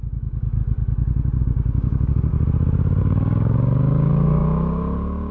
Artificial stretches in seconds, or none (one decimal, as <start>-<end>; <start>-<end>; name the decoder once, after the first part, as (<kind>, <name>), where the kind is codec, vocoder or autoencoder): 0.0-0.6 (codec, DAC); 1.4-2.3; 3.0-5.3